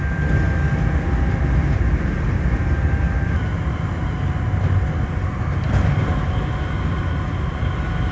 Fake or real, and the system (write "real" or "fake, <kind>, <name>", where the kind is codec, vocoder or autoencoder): real